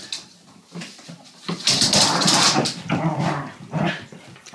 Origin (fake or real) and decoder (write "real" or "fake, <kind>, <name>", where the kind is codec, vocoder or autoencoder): real